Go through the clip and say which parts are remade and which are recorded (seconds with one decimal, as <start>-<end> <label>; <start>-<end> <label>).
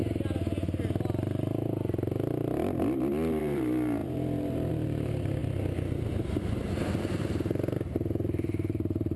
0.0-3.4 recorded; 3.4-5.4 remade; 5.4-6.1 recorded; 6.1-9.2 remade